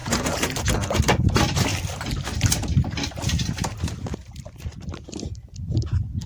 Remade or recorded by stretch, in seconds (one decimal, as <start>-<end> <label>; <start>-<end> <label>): 0.0-0.7 remade; 0.7-1.7 recorded; 1.7-5.2 remade; 5.2-6.3 recorded